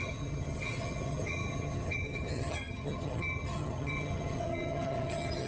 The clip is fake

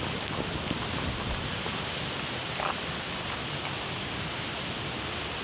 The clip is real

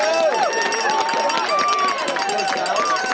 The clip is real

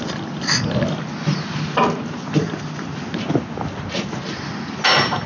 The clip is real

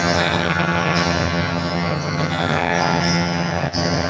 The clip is fake